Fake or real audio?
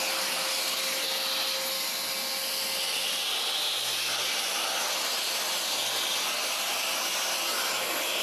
real